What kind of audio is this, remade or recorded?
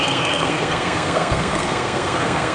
remade